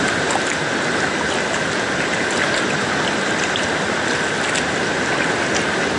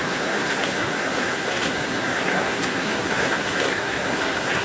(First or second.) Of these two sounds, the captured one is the first